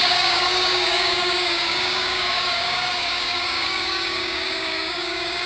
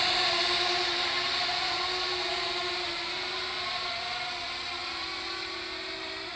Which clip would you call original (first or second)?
second